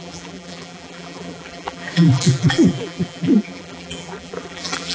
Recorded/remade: remade